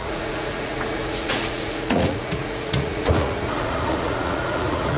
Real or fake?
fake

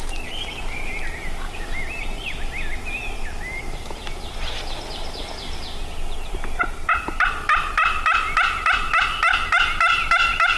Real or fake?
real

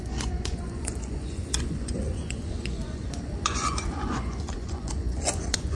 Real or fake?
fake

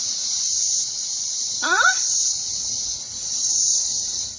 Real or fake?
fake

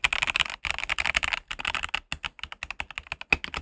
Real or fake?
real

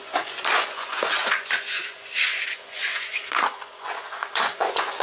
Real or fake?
fake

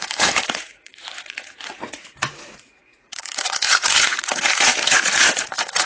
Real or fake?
fake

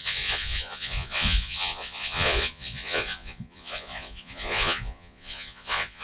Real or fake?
fake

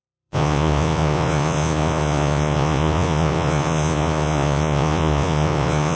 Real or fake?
fake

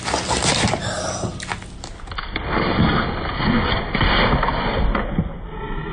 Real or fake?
real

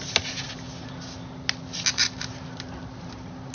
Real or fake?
real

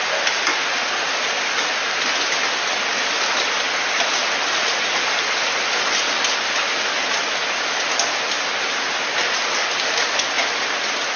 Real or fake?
real